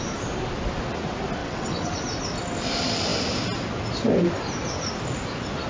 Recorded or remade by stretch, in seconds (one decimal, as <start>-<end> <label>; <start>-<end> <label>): 0.0-1.4 recorded; 1.4-2.0 remade; 2.0-5.7 recorded